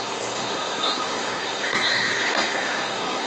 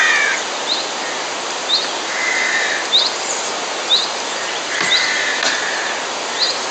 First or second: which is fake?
first